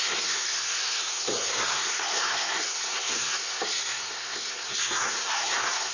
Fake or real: fake